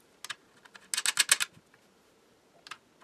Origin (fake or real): real